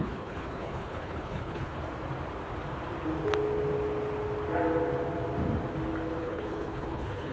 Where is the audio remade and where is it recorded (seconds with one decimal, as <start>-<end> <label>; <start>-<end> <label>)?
0.0-1.8 remade; 1.8-6.2 recorded; 6.2-7.3 remade